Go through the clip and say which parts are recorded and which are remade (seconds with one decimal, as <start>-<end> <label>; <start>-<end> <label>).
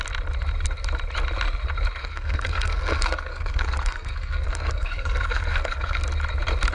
0.0-2.0 recorded; 2.0-6.0 remade; 6.0-6.7 recorded